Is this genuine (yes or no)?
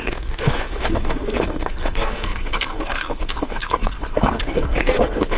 no